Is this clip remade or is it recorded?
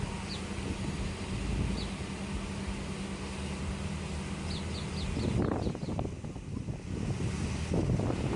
recorded